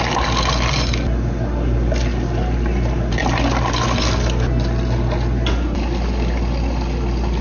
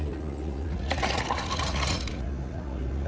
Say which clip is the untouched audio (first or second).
first